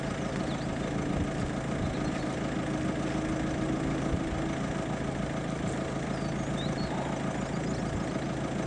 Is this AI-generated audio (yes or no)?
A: no